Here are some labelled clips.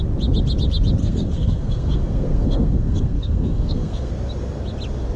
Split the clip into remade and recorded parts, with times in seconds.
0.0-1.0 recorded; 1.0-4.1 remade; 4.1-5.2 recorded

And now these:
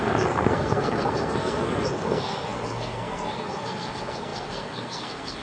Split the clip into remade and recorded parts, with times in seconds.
0.0-5.4 remade